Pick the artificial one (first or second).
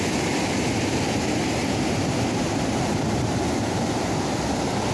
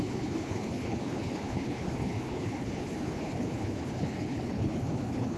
second